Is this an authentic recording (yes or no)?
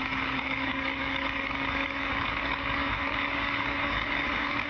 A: no